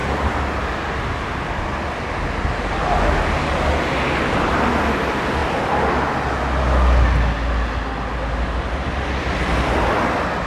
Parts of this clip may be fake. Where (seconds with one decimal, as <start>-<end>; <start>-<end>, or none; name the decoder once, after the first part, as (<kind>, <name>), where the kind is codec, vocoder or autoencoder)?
none